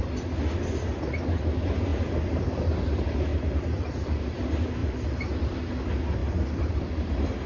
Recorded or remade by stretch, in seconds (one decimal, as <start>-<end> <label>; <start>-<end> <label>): 0.0-1.9 recorded; 1.9-2.7 remade; 2.7-3.3 recorded; 3.3-4.2 remade; 4.2-4.8 recorded; 4.8-5.6 remade; 5.6-6.2 recorded; 6.2-7.0 remade; 7.0-7.5 recorded